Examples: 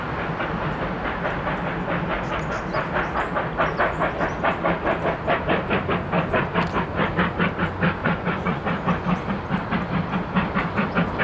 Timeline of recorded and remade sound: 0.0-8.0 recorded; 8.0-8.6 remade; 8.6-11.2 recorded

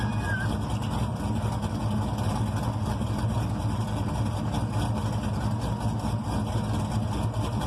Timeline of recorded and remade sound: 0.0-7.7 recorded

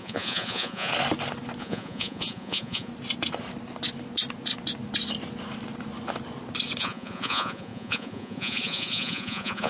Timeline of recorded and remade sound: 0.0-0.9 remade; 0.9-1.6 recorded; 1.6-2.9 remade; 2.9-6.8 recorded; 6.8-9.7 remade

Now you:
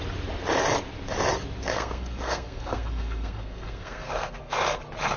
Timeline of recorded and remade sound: 0.0-1.7 recorded; 1.7-4.8 remade; 4.8-5.2 recorded